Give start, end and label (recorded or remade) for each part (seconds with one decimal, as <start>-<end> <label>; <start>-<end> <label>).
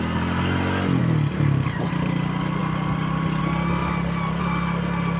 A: 0.0-5.2 recorded